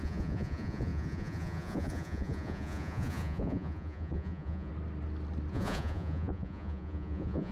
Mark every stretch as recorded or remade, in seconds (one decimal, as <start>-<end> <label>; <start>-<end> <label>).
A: 0.0-4.7 remade; 4.7-5.5 recorded; 5.5-7.5 remade

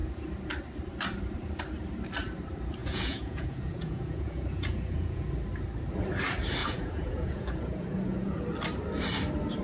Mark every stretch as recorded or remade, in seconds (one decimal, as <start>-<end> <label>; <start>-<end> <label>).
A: 0.0-2.8 recorded; 2.8-5.3 remade; 5.3-6.6 recorded; 6.6-8.4 remade; 8.4-9.6 recorded

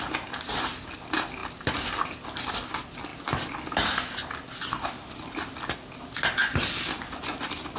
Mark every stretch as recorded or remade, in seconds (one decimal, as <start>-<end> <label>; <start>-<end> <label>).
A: 0.0-7.8 recorded